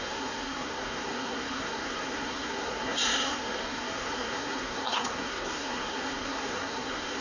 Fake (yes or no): yes